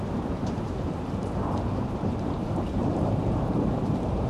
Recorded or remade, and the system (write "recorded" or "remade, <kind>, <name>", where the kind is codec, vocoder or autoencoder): remade, vocoder, BigVGAN v2